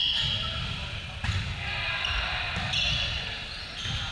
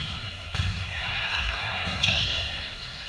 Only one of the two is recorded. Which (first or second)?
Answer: first